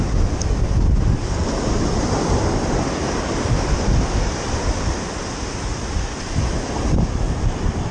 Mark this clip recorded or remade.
recorded